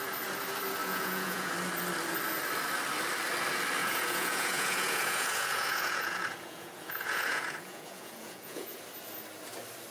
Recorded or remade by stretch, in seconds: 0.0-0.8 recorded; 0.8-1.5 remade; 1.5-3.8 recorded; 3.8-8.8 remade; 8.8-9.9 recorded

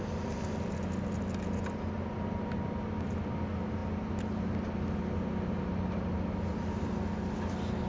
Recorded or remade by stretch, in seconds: 0.0-7.9 recorded

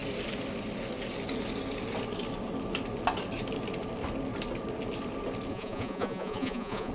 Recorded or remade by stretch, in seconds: 0.0-5.5 recorded; 5.5-6.9 remade

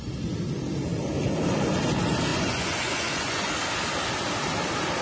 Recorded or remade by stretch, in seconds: 0.0-2.3 recorded; 2.3-3.5 remade; 3.5-5.0 recorded

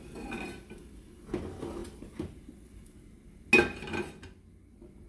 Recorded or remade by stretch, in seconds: 0.0-5.1 recorded

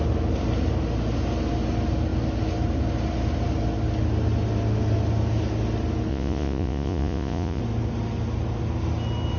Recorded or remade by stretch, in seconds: 0.0-6.1 recorded; 6.1-7.6 remade; 7.6-9.4 recorded